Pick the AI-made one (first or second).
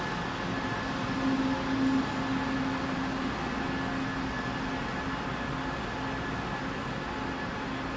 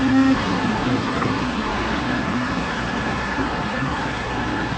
second